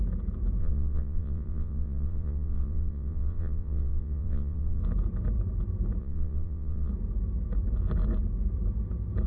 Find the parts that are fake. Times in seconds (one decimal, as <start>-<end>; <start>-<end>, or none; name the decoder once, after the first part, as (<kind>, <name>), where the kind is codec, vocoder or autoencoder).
0.6-4.8 (vocoder, WaveNeXt); 6.0-6.9